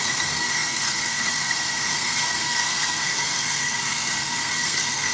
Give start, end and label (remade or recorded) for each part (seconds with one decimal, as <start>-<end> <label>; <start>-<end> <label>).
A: 0.0-5.1 remade